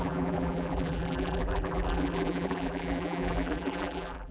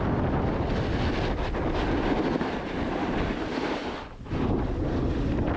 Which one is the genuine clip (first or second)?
second